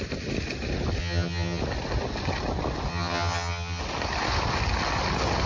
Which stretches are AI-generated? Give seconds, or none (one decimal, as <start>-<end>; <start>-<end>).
1.0-1.6; 2.9-3.8